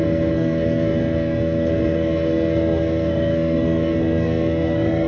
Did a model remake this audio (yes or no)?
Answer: yes